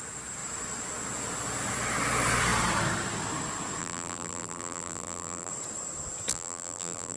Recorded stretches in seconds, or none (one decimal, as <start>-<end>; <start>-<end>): 0.0-3.8; 5.5-6.3